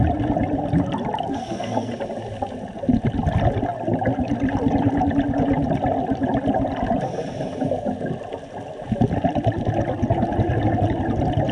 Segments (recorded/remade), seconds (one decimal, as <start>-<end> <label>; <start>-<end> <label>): 0.0-1.3 recorded; 1.3-1.9 remade; 1.9-11.5 recorded